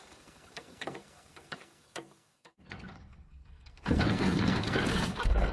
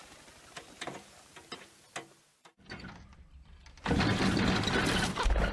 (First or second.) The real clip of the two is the second